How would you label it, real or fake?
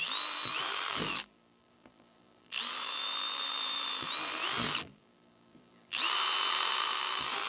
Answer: fake